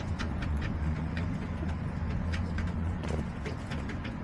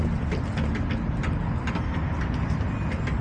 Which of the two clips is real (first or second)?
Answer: second